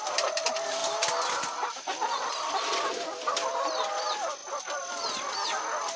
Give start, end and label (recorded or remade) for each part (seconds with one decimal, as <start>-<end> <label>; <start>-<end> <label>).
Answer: 0.0-6.0 recorded